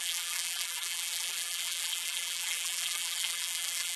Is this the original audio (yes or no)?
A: no